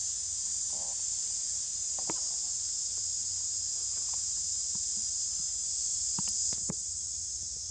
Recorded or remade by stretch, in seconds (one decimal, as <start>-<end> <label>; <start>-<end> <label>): 0.0-7.7 recorded